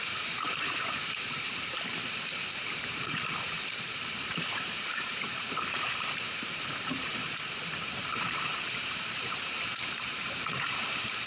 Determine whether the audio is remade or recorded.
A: remade